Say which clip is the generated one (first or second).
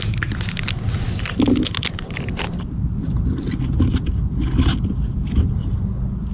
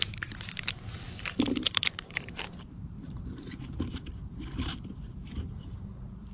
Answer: second